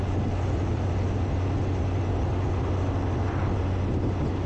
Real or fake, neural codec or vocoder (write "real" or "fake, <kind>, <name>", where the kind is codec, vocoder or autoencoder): real